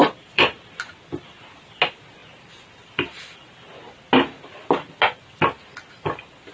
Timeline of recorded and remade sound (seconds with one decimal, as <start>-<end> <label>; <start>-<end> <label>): 0.0-0.9 remade; 0.9-2.2 recorded; 2.2-3.5 remade; 3.5-6.5 recorded